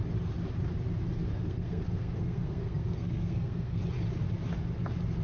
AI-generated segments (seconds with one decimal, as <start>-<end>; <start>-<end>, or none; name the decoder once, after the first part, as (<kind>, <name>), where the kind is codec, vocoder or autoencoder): 1.3-3.8 (codec, SNAC)